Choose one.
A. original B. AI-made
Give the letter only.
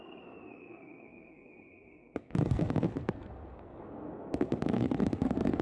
B